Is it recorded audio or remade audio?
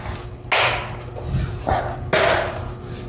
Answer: recorded